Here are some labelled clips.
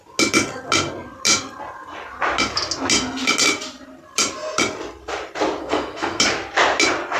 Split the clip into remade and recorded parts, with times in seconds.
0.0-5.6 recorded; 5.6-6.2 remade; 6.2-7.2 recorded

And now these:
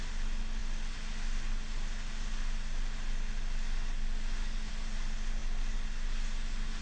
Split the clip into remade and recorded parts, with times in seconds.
0.0-6.8 recorded

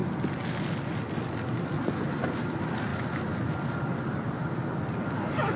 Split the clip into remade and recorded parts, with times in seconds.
0.0-5.6 recorded

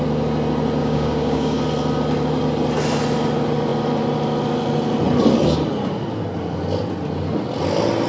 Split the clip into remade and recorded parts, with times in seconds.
0.0-0.8 recorded; 0.8-1.6 remade; 1.6-8.1 recorded